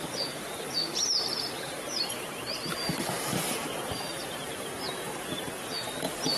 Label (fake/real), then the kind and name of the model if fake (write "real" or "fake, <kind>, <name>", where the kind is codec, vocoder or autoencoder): fake, vocoder, BigVGAN v2